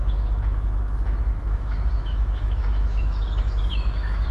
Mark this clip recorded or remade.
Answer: remade